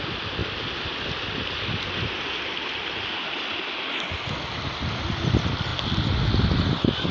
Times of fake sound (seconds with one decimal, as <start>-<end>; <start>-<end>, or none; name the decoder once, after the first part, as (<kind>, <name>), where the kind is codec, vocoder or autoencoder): none